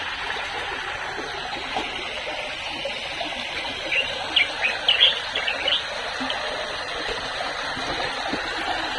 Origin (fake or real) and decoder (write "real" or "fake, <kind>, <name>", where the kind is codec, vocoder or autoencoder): real